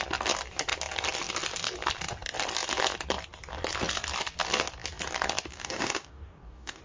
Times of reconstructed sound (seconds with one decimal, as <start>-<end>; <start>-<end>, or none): 5.5-6.8